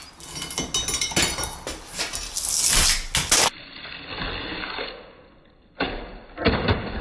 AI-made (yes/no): no